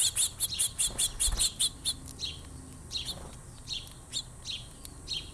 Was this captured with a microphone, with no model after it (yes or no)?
yes